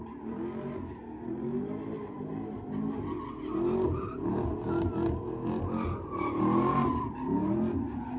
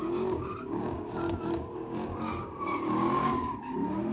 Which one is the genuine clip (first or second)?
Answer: first